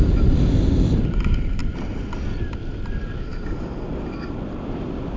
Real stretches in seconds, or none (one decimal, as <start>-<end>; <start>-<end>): 0.0-5.2